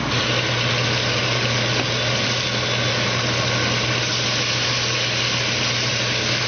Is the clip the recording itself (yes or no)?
yes